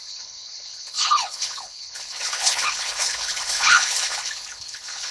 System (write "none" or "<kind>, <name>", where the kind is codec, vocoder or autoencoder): codec, HILCodec